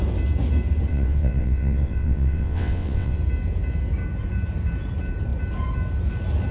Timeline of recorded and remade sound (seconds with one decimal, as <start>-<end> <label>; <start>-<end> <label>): 0.0-0.9 recorded; 0.9-3.2 remade; 3.2-6.5 recorded